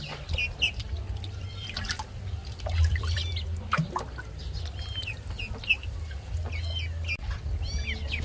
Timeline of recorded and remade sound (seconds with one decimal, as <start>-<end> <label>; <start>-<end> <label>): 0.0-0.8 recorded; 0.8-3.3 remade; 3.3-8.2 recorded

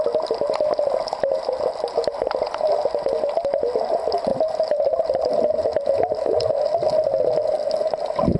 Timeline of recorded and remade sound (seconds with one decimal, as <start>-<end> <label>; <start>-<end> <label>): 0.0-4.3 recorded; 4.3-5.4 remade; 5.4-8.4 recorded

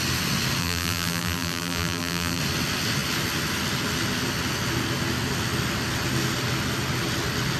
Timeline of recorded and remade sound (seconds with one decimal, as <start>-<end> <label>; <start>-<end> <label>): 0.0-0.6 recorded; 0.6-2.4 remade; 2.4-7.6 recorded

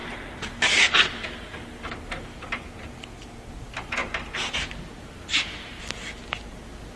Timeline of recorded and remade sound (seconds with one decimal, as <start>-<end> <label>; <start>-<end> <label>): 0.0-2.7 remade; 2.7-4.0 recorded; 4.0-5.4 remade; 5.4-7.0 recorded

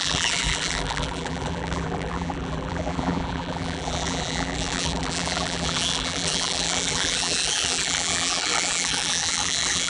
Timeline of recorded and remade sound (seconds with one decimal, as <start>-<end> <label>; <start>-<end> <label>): 0.0-9.9 remade